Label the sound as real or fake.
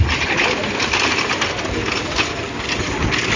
real